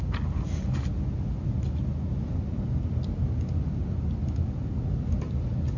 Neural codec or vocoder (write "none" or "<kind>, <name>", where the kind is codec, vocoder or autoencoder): none